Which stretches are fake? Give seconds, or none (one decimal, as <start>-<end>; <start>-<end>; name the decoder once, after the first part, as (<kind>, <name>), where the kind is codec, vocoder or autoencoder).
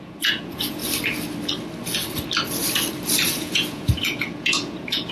0.0-0.8 (vocoder, Vocos); 3.3-5.1